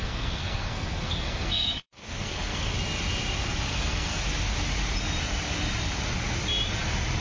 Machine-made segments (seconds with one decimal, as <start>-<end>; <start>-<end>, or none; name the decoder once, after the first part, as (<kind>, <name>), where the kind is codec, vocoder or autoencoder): 0.0-2.7 (codec, SNAC); 3.7-4.2